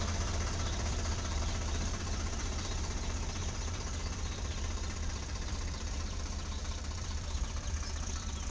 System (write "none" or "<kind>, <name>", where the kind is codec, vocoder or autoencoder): vocoder, BigVGAN v2